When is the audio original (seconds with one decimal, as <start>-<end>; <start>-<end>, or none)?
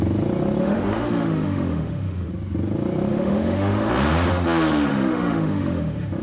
0.0-0.6; 2.3-3.1; 3.9-4.9